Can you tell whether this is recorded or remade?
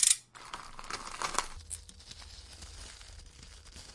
recorded